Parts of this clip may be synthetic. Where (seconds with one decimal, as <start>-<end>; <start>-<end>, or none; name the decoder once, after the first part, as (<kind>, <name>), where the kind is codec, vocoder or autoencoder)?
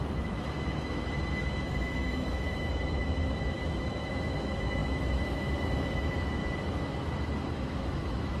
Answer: 0.0-6.4 (autoencoder, DAC-VAE); 7.5-8.4